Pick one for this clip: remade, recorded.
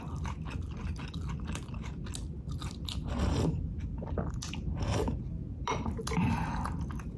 recorded